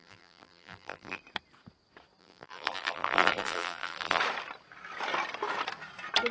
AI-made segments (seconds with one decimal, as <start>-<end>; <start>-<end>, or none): 0.0-1.2; 2.2-4.2